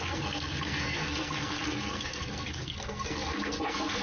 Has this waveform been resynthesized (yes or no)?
yes